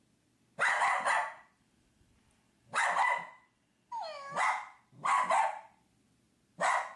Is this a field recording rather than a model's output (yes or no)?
yes